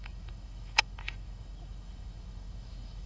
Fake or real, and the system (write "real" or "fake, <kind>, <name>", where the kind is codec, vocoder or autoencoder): fake, autoencoder, DAC-VAE